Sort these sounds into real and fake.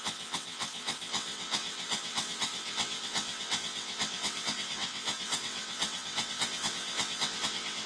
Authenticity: fake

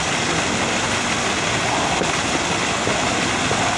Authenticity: real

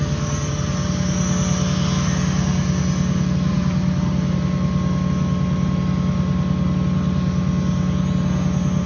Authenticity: real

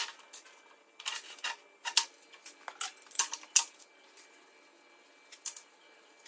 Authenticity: real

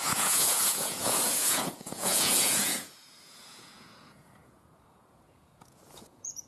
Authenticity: fake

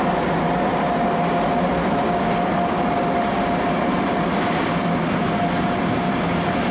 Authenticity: real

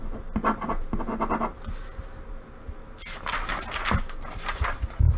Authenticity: real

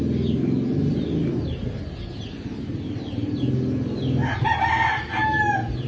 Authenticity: real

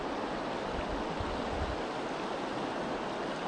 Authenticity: real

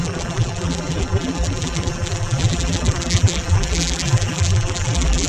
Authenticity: fake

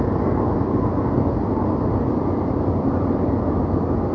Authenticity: real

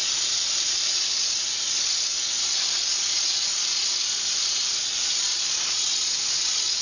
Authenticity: real